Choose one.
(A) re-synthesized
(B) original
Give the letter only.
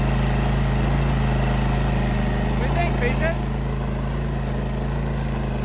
B